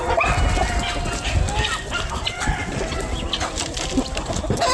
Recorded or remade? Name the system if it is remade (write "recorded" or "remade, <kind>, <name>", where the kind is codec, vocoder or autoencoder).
recorded